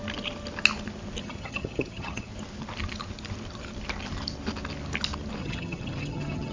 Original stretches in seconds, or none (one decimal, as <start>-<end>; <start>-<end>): 0.0-1.2; 2.3-5.4